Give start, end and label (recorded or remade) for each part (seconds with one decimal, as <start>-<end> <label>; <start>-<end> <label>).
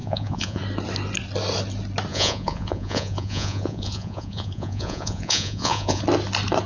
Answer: 0.0-0.6 remade; 0.6-2.1 recorded; 2.1-6.0 remade; 6.0-6.7 recorded